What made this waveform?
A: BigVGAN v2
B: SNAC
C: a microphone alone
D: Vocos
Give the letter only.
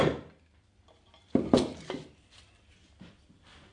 C